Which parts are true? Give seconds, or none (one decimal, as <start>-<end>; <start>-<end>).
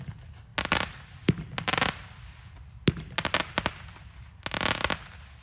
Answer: 0.0-5.4